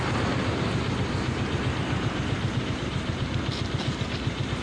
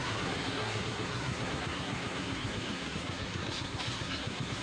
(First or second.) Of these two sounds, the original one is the first